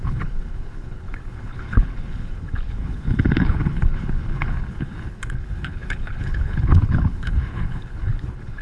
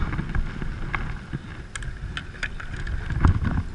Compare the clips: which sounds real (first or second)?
second